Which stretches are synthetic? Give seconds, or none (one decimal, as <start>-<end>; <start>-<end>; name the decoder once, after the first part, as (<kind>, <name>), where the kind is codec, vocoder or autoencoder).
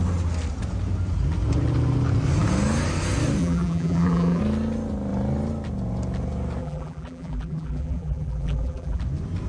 3.4-4.4 (vocoder, BigVGAN v2); 6.6-9.0